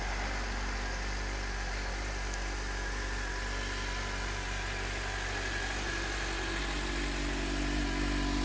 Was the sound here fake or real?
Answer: real